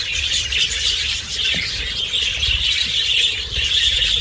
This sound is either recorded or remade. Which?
recorded